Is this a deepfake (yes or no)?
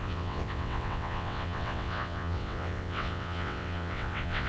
yes